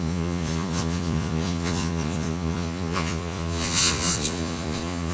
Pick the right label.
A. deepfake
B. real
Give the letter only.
A